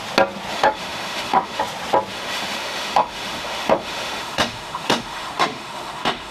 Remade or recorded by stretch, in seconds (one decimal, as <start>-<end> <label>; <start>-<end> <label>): 0.0-0.5 recorded; 0.5-1.6 remade; 1.6-2.1 recorded; 2.1-6.3 remade